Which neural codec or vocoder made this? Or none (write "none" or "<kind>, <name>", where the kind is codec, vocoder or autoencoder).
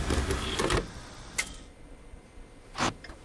none